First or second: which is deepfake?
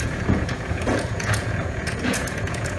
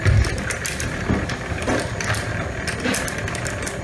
first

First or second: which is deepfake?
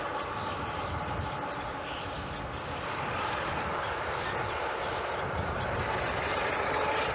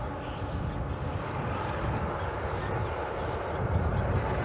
first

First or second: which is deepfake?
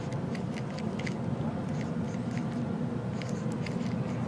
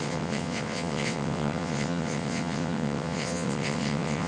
second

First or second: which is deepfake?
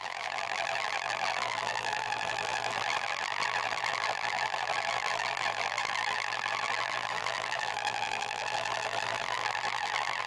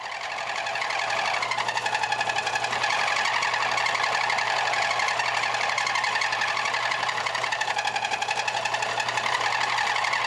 first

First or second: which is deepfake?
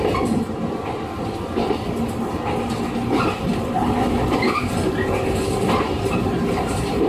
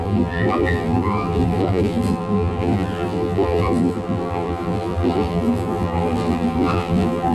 second